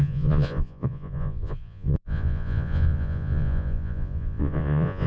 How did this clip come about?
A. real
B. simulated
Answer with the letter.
B